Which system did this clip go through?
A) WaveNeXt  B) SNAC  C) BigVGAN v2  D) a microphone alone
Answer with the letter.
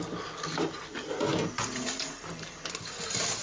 D